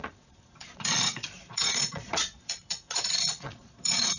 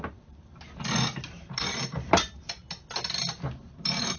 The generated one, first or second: first